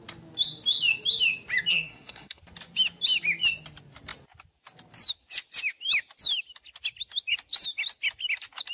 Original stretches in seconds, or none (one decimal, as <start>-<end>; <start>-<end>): 0.0-1.7; 2.4-8.7